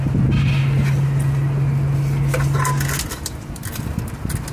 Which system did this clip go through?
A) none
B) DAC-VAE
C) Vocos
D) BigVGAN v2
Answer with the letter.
A